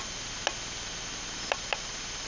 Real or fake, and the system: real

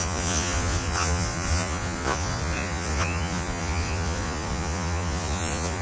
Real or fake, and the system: fake, vocoder, Vocos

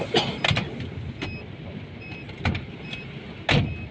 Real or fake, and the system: real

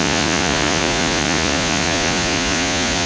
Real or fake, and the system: fake, vocoder, Vocos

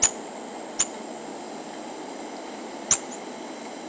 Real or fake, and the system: real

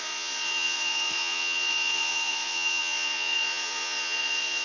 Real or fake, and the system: fake, vocoder, Vocos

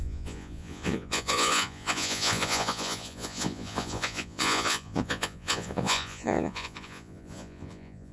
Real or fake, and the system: fake, vocoder, Vocos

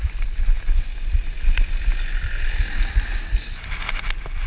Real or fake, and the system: real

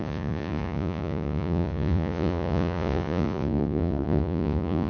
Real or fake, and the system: fake, vocoder, Vocos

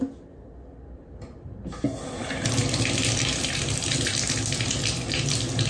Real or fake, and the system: real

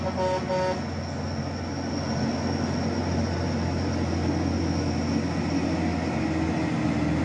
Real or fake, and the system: real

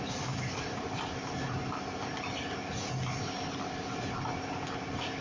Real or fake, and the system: real